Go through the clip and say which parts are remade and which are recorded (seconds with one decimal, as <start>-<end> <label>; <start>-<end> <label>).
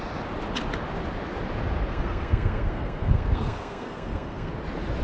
0.0-1.9 recorded; 1.9-4.5 remade; 4.5-5.0 recorded